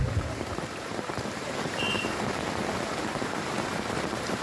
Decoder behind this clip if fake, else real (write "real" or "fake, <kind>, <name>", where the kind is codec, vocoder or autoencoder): fake, vocoder, BigVGAN v2